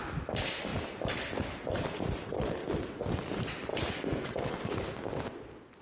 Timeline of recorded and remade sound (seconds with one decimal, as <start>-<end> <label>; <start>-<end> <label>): 0.0-3.7 recorded; 3.7-4.3 remade; 4.3-5.8 recorded